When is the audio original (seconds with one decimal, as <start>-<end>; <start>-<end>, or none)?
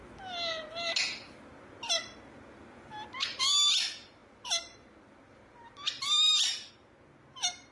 0.0-4.2; 6.7-7.7